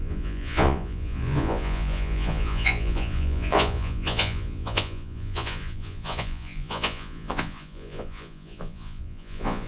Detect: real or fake fake